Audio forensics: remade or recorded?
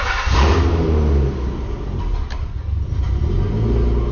recorded